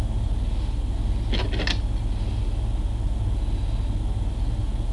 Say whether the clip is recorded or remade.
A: recorded